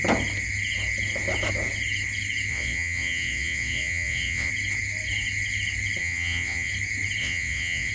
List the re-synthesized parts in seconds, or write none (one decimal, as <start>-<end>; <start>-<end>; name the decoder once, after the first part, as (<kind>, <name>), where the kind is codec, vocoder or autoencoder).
2.5-4.5 (vocoder, WaveNeXt); 6.0-6.7; 7.2-7.9